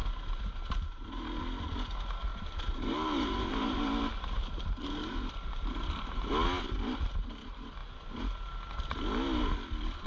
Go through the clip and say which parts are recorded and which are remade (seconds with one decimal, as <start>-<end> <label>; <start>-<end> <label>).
0.0-2.3 recorded; 2.3-6.3 remade; 6.3-10.1 recorded